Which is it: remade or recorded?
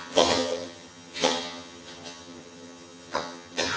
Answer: remade